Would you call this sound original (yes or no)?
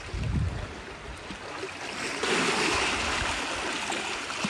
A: yes